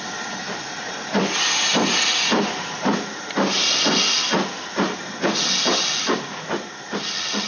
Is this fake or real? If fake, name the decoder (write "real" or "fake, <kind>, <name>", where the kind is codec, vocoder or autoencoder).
real